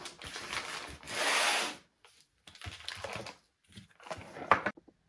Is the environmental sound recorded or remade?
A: recorded